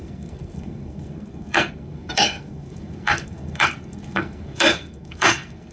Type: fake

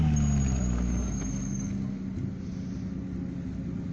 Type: real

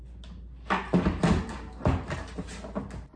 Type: real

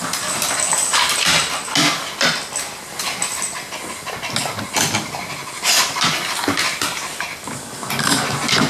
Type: real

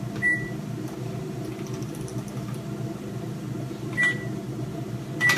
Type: real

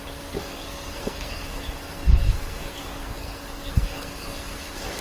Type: fake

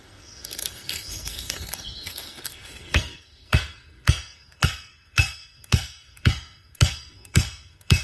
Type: fake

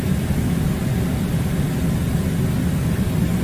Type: real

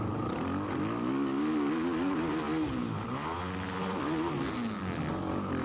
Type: real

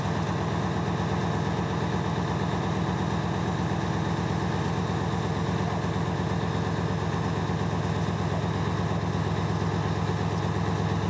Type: real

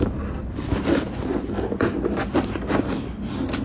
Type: real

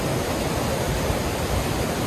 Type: real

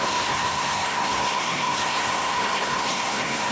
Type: fake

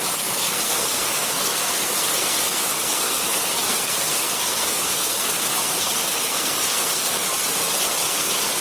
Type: fake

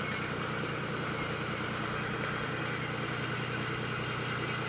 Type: real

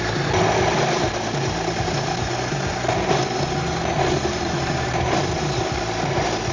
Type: real